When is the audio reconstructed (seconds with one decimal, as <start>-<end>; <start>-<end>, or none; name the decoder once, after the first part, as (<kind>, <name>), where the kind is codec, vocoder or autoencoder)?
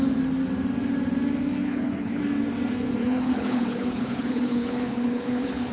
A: 1.6-2.2 (codec, HILCodec); 3.0-5.7